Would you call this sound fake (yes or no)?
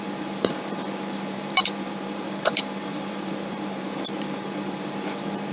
yes